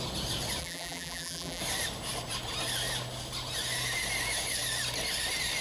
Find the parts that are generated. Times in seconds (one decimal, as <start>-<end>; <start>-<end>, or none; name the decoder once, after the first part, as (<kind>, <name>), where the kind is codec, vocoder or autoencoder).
0.6-1.6 (vocoder, BigVGAN v2)